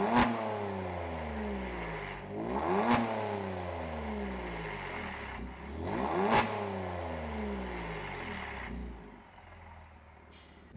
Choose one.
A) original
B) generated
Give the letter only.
A